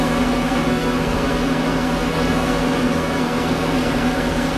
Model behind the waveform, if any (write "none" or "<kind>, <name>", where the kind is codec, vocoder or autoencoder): codec, SNAC